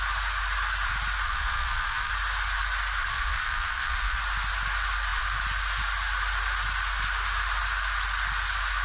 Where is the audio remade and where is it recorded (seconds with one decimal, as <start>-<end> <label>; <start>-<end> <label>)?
0.0-1.3 recorded; 1.3-2.1 remade; 2.1-3.1 recorded; 3.1-4.2 remade; 4.2-8.8 recorded